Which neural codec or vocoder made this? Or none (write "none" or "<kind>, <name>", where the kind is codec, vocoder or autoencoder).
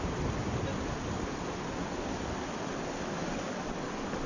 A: none